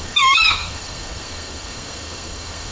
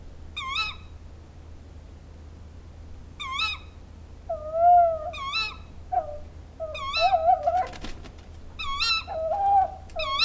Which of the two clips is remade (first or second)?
first